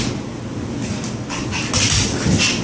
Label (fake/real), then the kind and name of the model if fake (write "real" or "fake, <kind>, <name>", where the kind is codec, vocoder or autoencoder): real